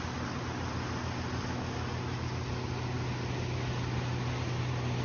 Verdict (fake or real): real